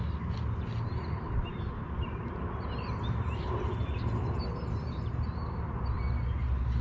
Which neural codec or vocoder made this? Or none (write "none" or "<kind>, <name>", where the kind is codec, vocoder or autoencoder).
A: none